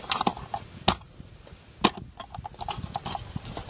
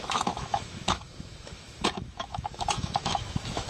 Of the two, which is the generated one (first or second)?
second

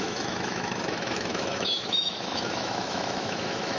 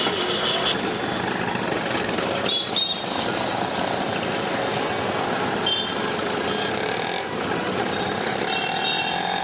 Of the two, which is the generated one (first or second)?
first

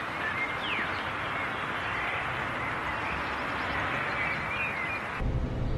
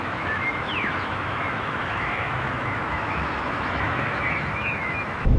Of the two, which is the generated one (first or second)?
second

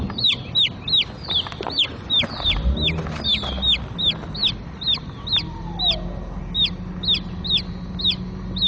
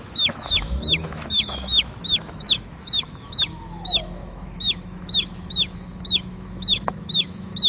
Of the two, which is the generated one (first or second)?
second